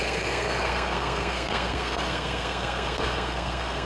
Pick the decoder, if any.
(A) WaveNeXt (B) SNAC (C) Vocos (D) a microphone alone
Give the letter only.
B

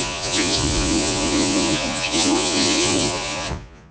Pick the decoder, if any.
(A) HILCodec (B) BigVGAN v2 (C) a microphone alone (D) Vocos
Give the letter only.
D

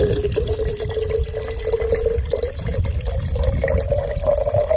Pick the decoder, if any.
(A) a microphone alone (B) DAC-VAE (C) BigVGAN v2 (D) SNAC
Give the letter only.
A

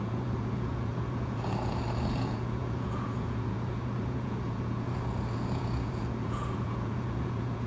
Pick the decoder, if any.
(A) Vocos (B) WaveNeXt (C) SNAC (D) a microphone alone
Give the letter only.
A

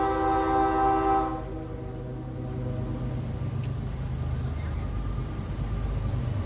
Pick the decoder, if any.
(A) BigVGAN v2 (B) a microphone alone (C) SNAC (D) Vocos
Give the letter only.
B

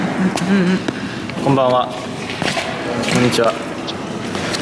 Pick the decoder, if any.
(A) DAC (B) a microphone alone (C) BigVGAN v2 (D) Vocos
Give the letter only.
B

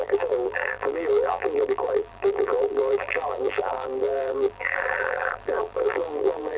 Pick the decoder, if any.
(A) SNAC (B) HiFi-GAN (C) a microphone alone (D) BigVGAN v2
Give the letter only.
D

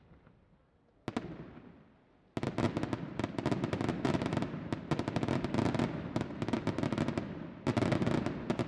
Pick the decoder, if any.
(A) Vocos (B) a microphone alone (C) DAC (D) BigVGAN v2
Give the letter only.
B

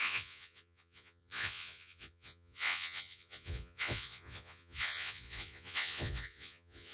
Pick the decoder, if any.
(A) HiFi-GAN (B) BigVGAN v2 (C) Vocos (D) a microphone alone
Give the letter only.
C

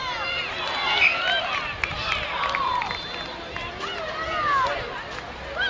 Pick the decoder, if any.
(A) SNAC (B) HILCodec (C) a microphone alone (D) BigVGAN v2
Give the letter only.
C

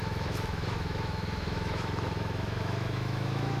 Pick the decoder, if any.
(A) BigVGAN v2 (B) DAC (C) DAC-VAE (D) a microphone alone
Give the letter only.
C